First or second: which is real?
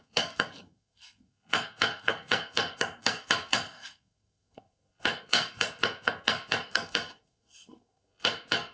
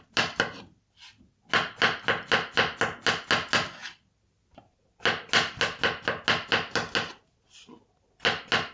second